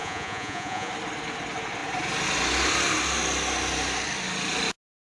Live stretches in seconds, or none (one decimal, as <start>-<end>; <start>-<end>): 0.9-5.0